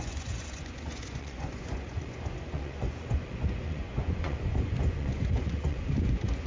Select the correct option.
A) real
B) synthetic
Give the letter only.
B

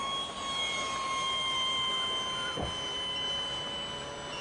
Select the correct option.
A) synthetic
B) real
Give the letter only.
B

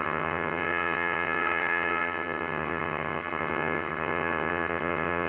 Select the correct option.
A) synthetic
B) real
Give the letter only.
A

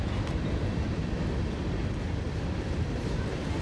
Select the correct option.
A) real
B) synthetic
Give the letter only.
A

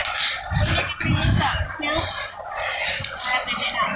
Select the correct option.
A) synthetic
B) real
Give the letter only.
B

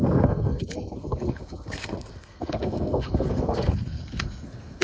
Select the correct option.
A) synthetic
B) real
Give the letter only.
A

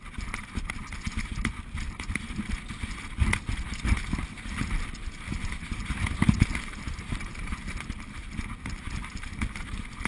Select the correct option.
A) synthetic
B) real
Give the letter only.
B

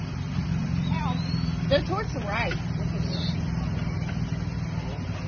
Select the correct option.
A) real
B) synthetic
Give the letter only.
A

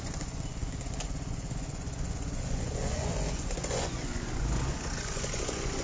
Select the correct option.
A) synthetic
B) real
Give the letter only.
A